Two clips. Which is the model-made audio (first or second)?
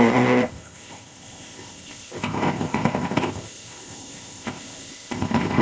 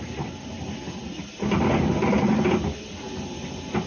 first